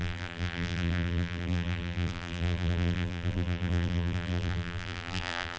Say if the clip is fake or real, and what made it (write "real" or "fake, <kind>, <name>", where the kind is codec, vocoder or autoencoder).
fake, vocoder, BigVGAN v2